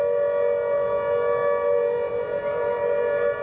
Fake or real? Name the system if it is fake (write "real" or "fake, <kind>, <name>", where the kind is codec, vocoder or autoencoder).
real